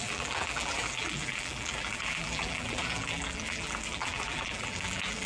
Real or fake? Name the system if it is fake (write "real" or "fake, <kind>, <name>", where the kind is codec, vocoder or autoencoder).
fake, vocoder, BigVGAN v2